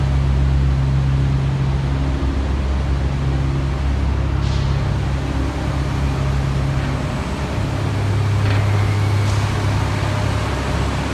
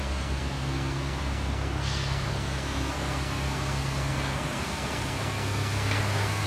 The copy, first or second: second